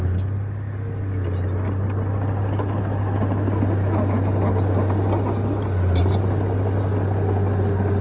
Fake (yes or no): no